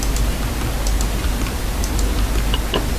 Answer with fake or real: real